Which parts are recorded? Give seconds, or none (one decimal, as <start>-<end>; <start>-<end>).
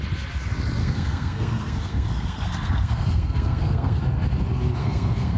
0.0-0.8; 4.0-4.8